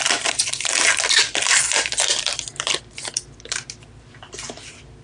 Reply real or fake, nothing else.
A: fake